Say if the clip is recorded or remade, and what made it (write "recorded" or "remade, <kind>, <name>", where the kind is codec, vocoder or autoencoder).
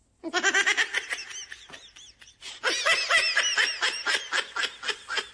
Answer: recorded